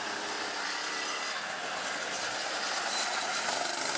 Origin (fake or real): real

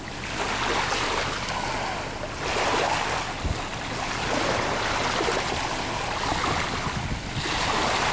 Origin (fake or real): real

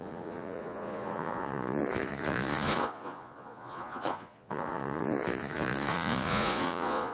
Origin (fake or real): fake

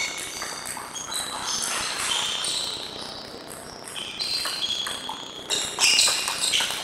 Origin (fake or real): real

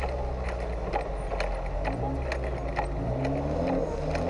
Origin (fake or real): real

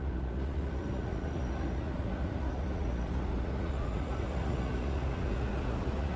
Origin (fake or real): fake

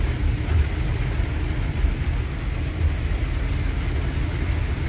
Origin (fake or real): real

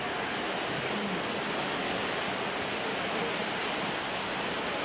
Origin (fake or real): real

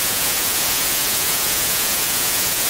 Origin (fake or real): fake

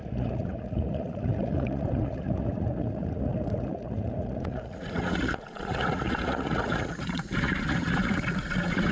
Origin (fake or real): fake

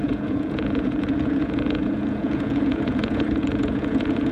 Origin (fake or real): fake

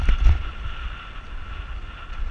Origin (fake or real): real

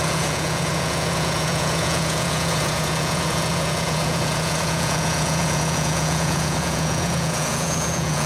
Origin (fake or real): fake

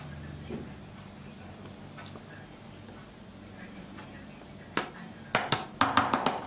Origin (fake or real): real